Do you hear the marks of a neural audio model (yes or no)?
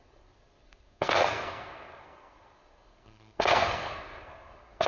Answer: yes